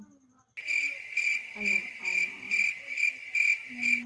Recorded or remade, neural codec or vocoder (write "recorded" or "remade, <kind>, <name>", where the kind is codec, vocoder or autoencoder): recorded